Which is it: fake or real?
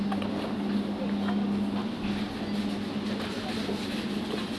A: real